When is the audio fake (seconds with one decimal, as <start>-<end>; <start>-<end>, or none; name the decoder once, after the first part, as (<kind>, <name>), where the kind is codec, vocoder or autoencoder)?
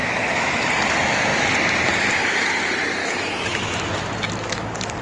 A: 0.0-0.7 (autoencoder, DAC-VAE); 3.0-3.8